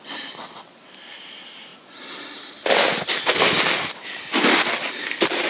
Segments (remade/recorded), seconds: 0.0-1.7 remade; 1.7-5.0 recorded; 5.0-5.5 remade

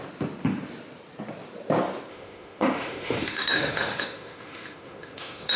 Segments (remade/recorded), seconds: 0.0-2.1 recorded; 2.1-5.6 remade

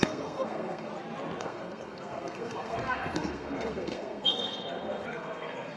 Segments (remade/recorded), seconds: 0.0-0.9 remade; 0.9-1.4 recorded; 1.4-5.8 remade

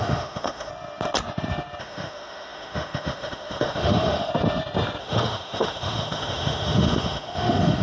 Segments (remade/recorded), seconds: 0.0-0.7 remade; 0.7-1.8 recorded; 1.8-4.3 remade; 4.3-5.0 recorded; 5.0-7.8 remade

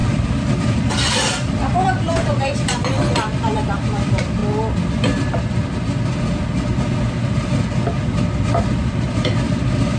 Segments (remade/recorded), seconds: 0.0-4.4 remade; 4.4-8.9 recorded; 8.9-10.0 remade

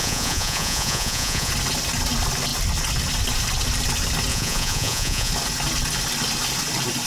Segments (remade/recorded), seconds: 0.0-1.5 remade; 1.5-4.3 recorded; 4.3-5.3 remade; 5.3-7.1 recorded

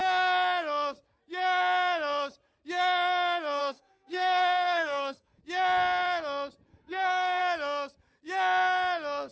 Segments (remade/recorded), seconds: 0.0-3.6 recorded; 3.6-5.4 remade; 5.4-6.7 recorded; 6.7-7.4 remade; 7.4-9.3 recorded

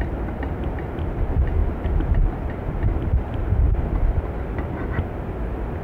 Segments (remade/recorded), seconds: 0.0-5.8 remade